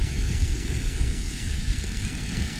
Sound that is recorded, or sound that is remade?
remade